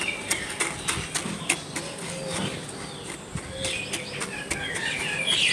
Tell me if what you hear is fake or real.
real